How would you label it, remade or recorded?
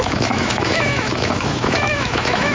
remade